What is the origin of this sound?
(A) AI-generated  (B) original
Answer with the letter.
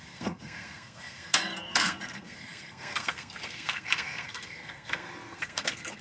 A